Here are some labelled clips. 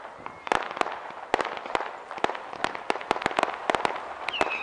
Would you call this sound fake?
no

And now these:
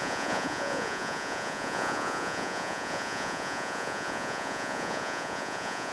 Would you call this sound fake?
yes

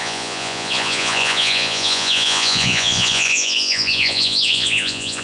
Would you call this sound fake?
yes